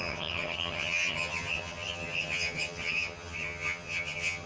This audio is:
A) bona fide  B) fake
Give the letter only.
B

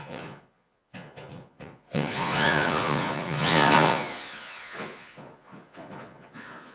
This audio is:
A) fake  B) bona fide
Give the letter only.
A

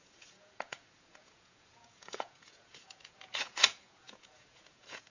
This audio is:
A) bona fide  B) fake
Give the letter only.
B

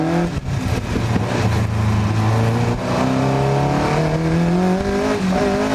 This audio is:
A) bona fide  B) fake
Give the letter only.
A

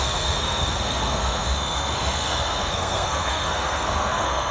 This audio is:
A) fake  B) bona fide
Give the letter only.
A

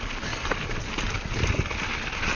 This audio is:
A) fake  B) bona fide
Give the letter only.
B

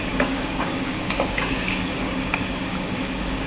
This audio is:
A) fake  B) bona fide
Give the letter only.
A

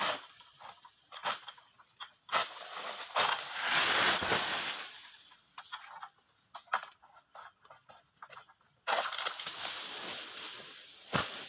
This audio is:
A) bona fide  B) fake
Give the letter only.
A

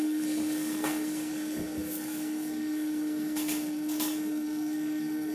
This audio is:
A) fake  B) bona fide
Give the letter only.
A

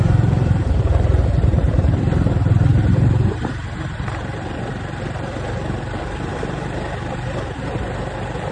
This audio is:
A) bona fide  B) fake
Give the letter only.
B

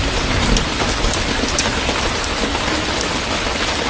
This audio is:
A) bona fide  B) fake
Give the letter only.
A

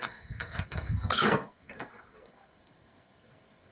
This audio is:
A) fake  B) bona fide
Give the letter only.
A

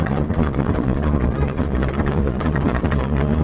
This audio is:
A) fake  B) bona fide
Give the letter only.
A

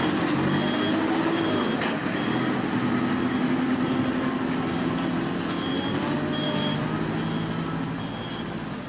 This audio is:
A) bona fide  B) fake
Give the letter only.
A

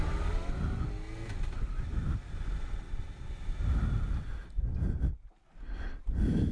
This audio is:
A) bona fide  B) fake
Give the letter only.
A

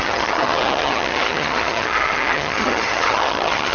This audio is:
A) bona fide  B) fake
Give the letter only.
B